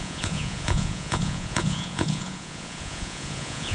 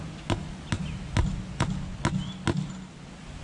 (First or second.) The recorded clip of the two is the second